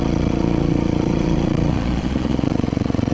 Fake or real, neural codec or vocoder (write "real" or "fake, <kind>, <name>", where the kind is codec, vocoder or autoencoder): fake, vocoder, Vocos